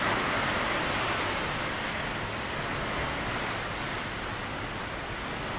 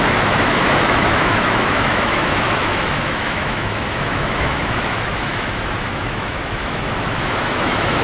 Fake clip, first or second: second